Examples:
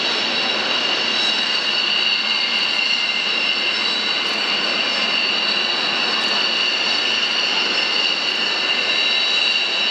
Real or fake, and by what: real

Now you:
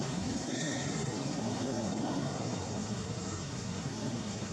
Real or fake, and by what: fake, codec, SNAC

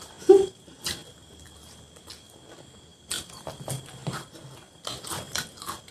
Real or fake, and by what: real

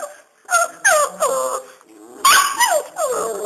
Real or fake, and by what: real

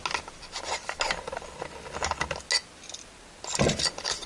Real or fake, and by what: real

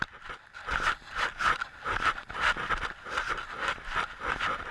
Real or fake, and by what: real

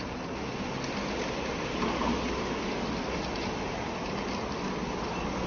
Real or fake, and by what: real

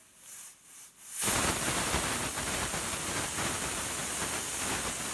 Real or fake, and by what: real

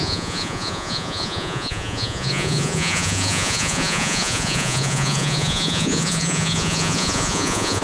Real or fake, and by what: fake, vocoder, Vocos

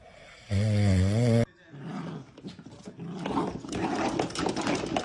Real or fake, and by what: real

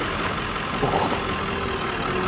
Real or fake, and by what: real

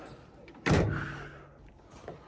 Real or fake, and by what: real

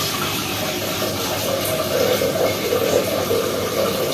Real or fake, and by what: real